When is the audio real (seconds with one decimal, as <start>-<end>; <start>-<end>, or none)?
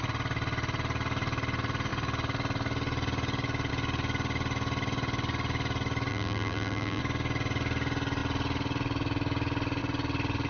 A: 0.0-6.1; 7.0-10.5